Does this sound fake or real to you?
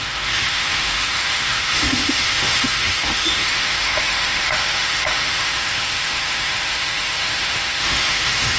fake